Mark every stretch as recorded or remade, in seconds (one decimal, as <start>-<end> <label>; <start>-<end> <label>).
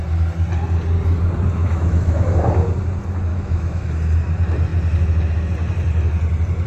0.0-1.6 recorded; 1.6-2.3 remade; 2.3-3.3 recorded; 3.3-3.9 remade; 3.9-6.7 recorded